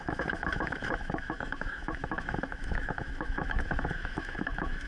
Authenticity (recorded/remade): remade